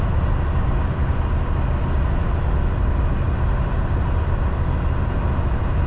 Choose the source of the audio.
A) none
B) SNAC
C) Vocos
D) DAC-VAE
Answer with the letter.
A